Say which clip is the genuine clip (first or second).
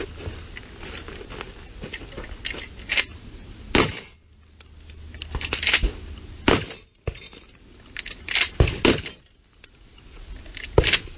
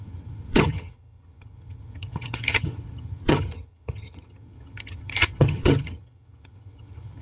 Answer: first